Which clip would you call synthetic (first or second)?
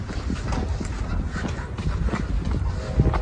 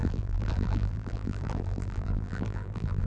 second